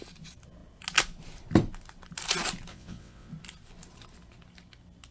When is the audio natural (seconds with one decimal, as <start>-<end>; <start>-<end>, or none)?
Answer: 0.0-2.7; 3.3-5.1